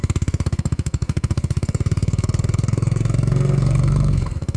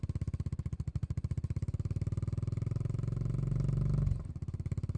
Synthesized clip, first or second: first